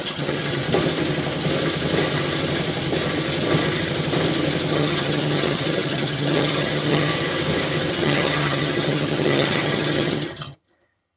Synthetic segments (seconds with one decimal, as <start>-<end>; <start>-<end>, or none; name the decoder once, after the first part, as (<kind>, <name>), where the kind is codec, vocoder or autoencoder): 0.0-0.6 (vocoder, HiFi-GAN); 4.7-7.1; 7.9-11.2